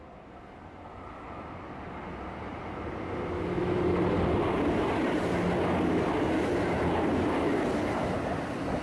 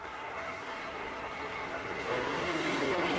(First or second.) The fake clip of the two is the second